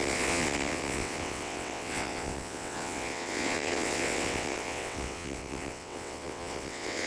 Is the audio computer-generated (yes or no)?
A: yes